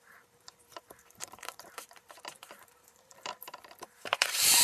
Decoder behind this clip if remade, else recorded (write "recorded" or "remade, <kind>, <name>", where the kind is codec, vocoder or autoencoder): remade, vocoder, BigVGAN v2